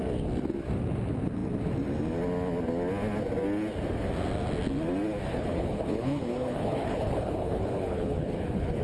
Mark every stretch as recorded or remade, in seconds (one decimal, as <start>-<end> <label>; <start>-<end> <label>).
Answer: 0.0-5.3 recorded; 5.3-8.8 remade